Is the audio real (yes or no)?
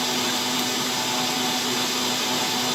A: yes